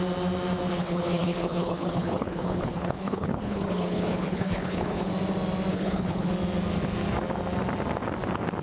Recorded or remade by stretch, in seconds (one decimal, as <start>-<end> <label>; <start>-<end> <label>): 0.0-0.7 recorded; 0.7-5.1 remade; 5.1-5.7 recorded; 5.7-6.3 remade; 6.3-8.6 recorded